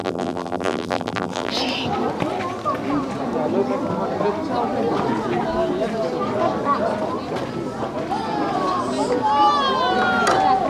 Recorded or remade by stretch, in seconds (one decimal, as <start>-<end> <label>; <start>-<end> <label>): 0.0-1.5 remade; 1.5-10.7 recorded